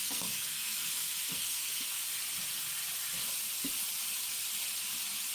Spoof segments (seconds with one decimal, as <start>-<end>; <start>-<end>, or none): 0.0-1.9